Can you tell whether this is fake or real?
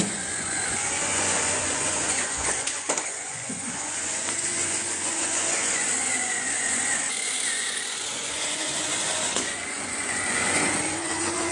fake